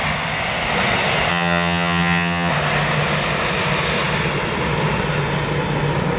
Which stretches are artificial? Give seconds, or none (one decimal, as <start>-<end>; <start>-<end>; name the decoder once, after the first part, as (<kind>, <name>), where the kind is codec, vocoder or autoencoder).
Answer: 1.3-2.5 (vocoder, HiFi-GAN)